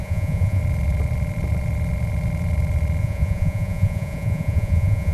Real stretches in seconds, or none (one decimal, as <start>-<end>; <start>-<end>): 0.6-3.0